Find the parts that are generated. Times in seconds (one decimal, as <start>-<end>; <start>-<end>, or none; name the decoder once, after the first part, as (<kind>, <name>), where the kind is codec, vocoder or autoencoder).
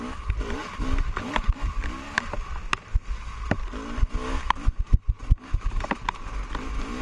none